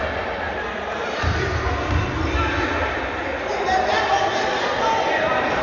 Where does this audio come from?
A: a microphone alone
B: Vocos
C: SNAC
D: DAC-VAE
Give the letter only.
A